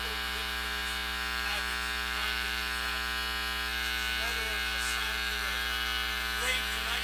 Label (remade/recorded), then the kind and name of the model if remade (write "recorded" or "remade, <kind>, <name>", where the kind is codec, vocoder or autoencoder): remade, autoencoder, DAC-VAE